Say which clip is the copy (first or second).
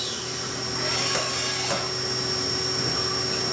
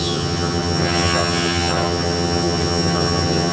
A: second